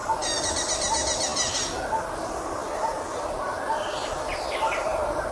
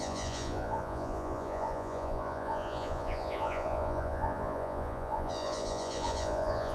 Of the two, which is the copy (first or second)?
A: second